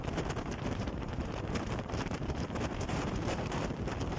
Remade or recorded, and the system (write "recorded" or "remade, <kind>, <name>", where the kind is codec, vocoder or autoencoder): remade, vocoder, BigVGAN v2